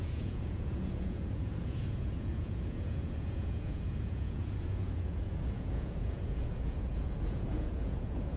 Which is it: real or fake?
fake